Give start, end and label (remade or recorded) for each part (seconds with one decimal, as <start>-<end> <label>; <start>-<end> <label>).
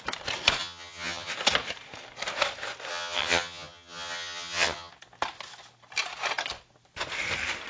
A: 0.0-0.6 recorded; 0.6-1.3 remade; 1.3-2.9 recorded; 2.9-4.9 remade; 4.9-7.7 recorded